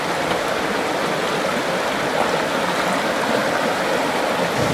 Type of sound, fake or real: real